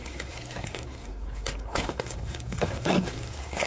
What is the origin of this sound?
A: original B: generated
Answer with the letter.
B